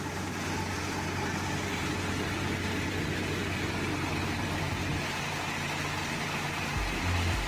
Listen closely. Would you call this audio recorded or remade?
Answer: recorded